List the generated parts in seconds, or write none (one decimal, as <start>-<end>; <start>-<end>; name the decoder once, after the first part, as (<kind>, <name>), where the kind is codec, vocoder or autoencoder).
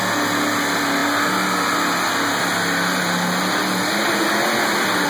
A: none